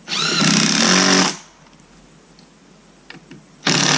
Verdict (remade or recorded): recorded